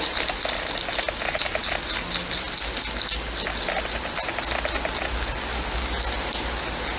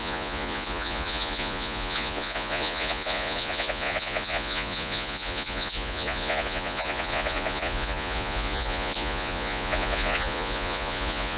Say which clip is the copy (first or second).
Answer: second